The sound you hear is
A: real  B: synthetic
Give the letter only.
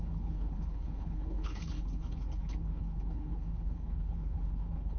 B